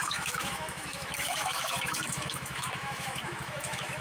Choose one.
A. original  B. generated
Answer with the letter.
B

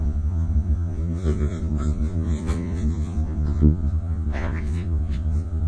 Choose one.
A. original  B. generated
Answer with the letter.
B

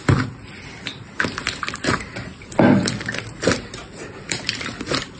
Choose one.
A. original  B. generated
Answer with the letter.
B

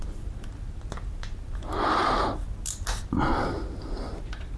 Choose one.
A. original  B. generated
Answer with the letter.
A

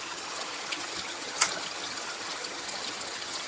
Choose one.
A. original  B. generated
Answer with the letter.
B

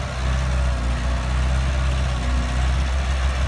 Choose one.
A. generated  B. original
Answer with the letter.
B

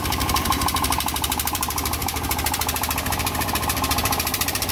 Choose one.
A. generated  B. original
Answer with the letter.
A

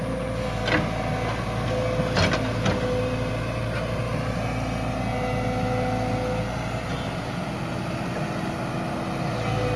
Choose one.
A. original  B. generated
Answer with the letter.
A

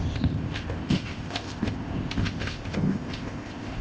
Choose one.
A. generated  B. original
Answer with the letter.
A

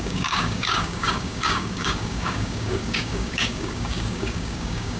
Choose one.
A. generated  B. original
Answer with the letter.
A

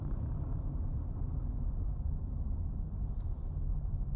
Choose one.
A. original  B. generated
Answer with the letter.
A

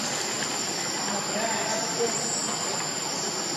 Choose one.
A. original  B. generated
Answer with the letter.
A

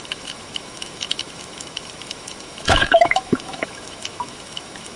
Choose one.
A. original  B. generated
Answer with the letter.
B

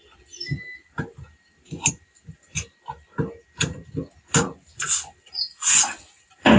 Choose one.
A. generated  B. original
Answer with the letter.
B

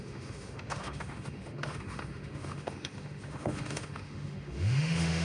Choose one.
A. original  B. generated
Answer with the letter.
B